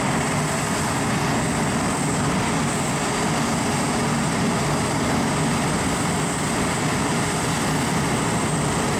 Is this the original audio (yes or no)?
yes